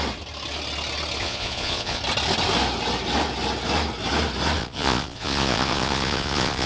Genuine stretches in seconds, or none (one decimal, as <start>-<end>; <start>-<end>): 0.0-1.2; 2.0-4.6